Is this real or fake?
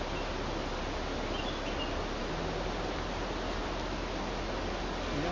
real